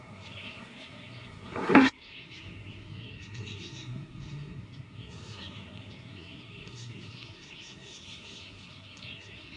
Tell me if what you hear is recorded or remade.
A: remade